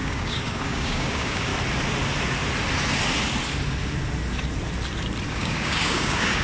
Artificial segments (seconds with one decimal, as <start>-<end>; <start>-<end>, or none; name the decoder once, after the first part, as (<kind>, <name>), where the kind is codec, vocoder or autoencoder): 0.0-1.5 (codec, DAC); 5.3-6.4